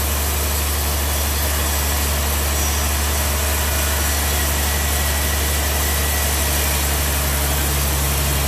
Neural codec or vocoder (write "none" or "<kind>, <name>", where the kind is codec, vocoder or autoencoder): none